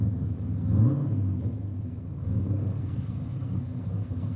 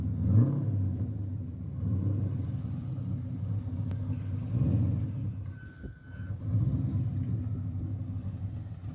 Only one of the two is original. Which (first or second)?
second